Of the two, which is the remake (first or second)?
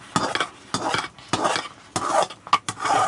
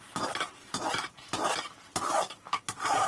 second